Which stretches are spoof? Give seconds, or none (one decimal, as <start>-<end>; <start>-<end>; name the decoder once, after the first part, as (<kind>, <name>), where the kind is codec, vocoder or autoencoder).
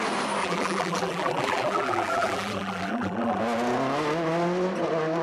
0.4-3.4 (vocoder, BigVGAN v2)